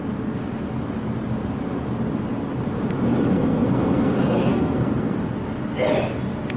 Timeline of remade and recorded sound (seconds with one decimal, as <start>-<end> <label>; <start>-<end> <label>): 0.0-3.3 recorded; 3.3-5.2 remade; 5.2-6.6 recorded